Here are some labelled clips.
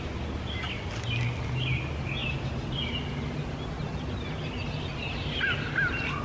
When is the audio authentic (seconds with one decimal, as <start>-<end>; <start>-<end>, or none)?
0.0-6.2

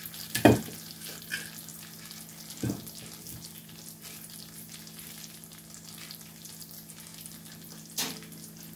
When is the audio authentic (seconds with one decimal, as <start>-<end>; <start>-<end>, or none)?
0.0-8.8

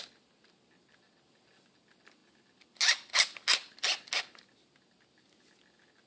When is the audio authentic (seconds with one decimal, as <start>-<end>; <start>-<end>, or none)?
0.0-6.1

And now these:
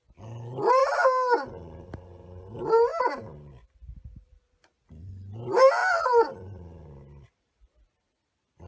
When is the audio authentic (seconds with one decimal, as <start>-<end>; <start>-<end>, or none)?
0.0-2.9; 4.6-5.8

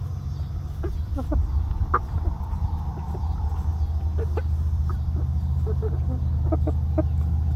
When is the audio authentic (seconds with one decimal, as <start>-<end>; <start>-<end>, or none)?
0.0-7.6